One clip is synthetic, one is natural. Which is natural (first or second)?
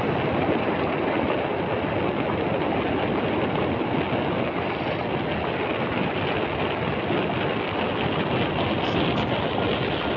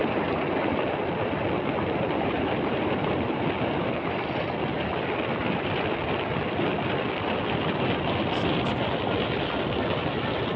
first